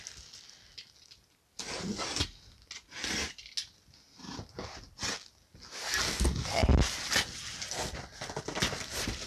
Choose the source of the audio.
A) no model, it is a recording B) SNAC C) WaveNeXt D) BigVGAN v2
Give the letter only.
A